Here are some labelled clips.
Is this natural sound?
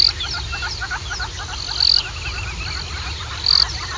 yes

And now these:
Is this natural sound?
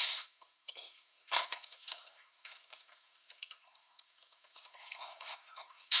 no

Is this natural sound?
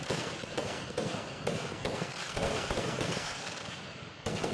no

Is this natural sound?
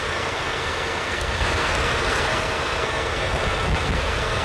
no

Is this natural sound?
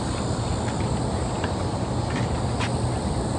yes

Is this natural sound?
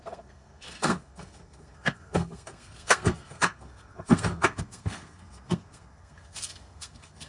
no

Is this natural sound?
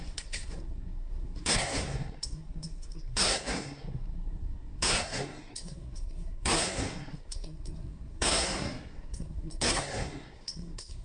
no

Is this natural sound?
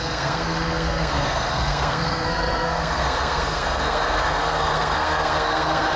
no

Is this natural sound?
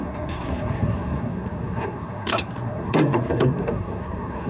no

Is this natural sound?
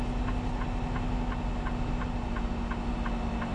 yes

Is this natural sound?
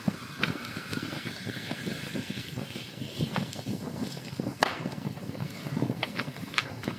no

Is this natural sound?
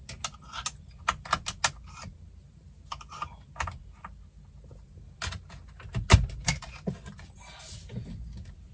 yes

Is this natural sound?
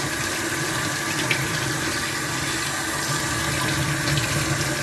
yes